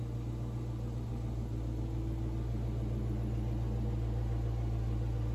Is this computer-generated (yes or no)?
no